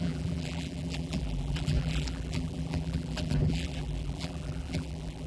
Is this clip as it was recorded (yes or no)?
no